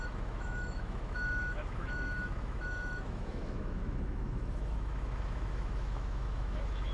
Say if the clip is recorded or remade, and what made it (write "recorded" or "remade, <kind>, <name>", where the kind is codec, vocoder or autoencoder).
remade, autoencoder, DAC-VAE